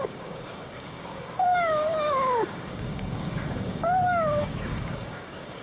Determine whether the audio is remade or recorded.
remade